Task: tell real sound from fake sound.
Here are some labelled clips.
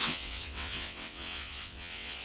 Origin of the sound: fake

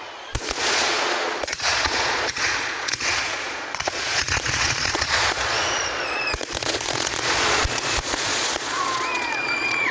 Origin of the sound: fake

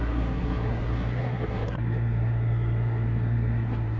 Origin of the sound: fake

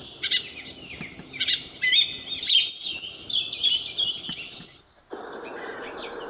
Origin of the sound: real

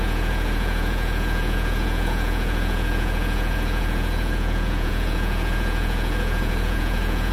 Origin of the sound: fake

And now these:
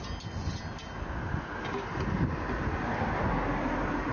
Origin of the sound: real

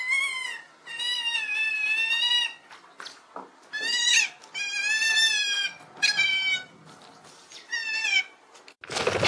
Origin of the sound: real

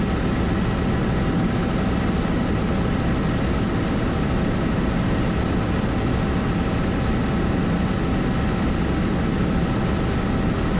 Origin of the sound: real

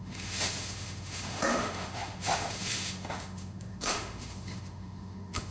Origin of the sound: fake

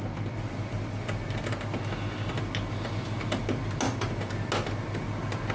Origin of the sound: real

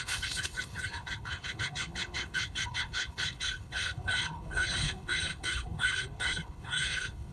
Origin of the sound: fake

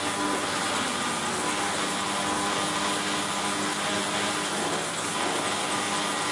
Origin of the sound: real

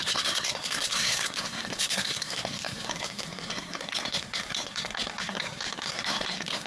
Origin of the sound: fake